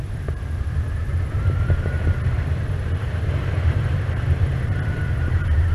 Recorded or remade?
remade